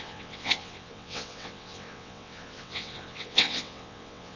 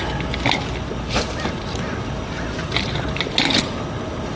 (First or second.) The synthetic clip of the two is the first